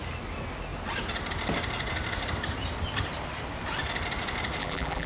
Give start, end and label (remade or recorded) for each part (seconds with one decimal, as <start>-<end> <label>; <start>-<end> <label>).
0.0-4.6 recorded; 4.6-5.1 remade